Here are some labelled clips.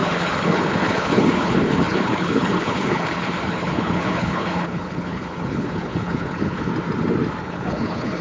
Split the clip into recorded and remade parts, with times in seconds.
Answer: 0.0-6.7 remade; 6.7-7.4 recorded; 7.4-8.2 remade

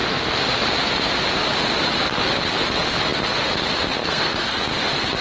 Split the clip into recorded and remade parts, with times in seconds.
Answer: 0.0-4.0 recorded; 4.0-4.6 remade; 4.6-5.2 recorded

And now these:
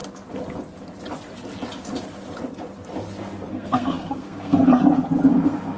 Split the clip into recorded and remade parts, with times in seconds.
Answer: 0.0-3.5 recorded; 3.5-4.7 remade; 4.7-5.3 recorded; 5.3-5.8 remade